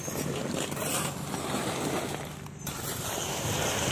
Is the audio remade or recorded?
recorded